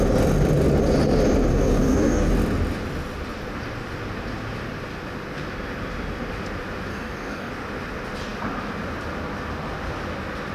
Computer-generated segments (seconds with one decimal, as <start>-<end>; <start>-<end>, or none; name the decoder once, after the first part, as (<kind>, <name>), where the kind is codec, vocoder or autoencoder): 1.5-2.3 (codec, DAC); 6.9-7.5